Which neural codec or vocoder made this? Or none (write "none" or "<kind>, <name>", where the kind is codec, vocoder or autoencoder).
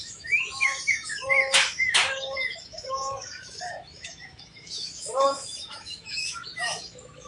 autoencoder, DAC-VAE